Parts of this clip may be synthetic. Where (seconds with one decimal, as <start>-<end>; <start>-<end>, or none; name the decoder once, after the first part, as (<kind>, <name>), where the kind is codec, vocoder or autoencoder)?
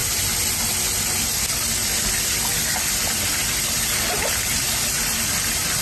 none